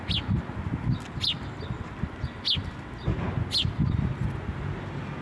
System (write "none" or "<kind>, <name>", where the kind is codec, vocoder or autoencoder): none